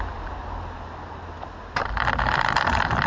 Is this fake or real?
real